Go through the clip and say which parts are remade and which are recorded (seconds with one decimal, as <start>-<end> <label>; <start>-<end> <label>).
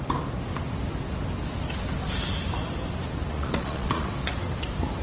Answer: 0.0-3.3 recorded; 3.3-4.1 remade; 4.1-5.0 recorded